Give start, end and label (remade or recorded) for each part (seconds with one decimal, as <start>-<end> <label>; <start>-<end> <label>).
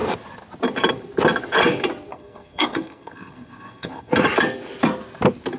0.0-2.1 recorded; 2.1-4.1 remade; 4.1-5.6 recorded